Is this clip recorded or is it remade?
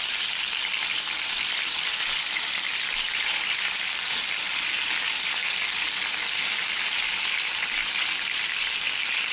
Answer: remade